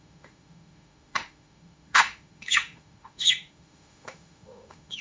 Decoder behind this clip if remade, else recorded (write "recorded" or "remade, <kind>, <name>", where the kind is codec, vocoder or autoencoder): remade, autoencoder, DAC-VAE